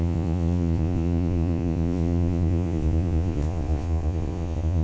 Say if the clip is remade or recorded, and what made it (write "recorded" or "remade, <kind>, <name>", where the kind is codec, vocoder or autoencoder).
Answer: remade, vocoder, Vocos